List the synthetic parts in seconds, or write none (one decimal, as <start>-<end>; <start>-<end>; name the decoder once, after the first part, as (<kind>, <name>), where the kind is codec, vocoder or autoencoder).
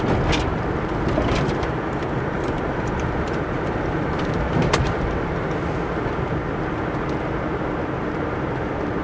0.5-1.0 (vocoder, BigVGAN v2); 1.6-5.6